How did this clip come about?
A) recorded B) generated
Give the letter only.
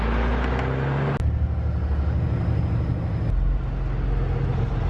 A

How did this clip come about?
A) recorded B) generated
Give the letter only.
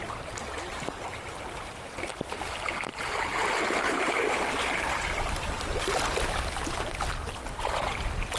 A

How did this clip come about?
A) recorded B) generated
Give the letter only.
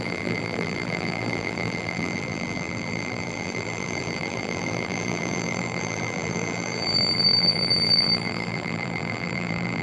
B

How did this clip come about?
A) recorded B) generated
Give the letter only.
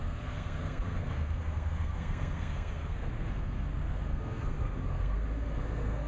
B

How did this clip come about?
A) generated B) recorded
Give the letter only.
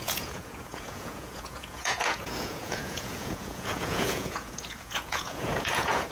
A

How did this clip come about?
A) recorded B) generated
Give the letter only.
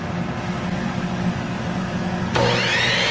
A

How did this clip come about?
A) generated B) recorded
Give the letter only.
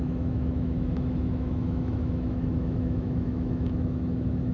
A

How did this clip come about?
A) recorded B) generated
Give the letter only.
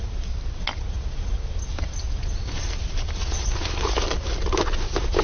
A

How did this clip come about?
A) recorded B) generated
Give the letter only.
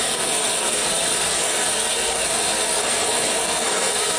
B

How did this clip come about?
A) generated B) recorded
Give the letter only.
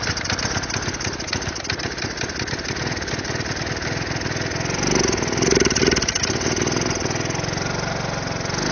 B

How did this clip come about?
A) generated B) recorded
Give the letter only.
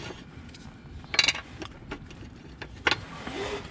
B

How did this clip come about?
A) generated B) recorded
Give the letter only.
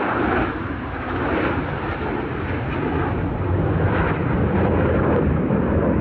B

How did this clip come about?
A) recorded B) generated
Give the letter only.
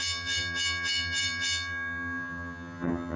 B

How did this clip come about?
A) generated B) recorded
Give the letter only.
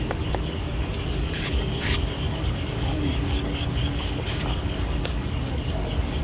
A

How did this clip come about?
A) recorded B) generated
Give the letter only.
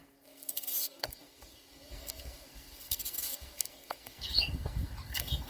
B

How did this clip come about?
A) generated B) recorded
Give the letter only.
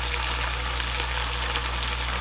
B